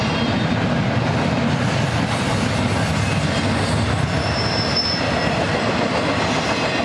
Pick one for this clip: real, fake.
real